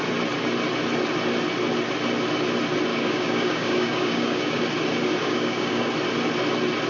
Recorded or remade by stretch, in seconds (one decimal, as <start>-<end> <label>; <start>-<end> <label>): 0.0-2.9 recorded; 2.9-4.6 remade; 4.6-5.2 recorded; 5.2-5.9 remade; 5.9-6.9 recorded